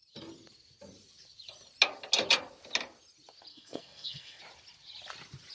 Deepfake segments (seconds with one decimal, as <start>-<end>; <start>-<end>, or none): 3.5-4.4